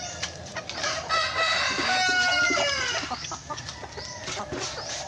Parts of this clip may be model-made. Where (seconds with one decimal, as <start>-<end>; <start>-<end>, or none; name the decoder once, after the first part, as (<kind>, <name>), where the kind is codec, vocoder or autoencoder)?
none